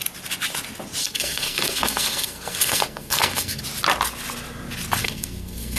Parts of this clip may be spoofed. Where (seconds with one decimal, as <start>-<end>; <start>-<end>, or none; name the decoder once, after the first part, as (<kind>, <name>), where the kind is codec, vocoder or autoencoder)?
1.0-3.6 (codec, SNAC); 5.0-5.8